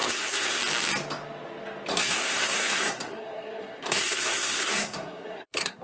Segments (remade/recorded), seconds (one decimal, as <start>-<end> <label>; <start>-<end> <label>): 0.0-0.6 remade; 0.6-1.9 recorded; 1.9-5.8 remade